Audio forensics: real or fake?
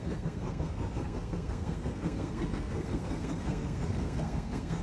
fake